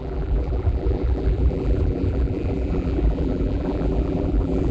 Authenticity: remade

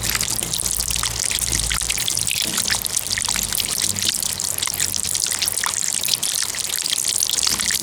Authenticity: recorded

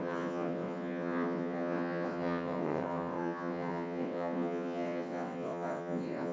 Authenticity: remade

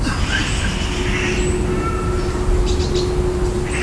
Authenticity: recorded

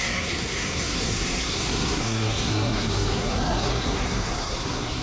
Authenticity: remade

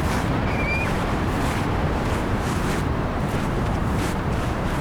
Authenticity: remade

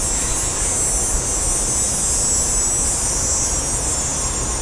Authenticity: recorded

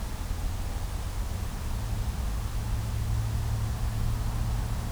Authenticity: recorded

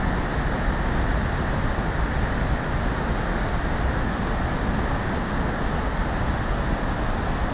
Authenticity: recorded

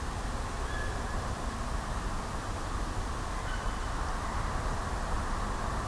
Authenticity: recorded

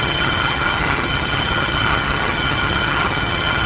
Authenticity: remade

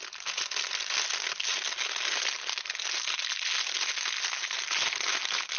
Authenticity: recorded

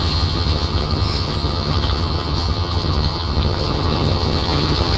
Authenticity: remade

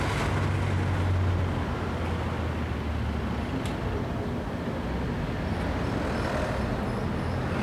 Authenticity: recorded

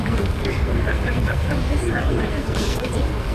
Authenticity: remade